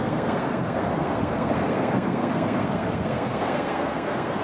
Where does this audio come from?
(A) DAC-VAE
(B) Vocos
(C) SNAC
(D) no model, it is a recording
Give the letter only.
C